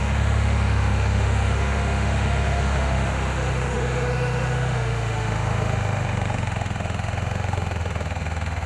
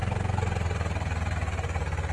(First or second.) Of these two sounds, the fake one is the first